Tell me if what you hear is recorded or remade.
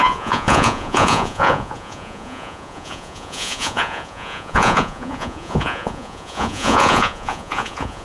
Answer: remade